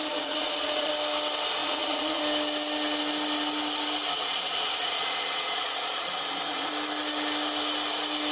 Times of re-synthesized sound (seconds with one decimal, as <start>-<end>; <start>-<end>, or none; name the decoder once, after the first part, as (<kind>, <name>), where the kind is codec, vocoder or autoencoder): 0.0-0.9 (vocoder, Vocos); 1.6-2.2; 4.1-6.7